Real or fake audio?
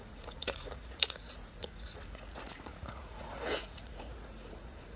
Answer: fake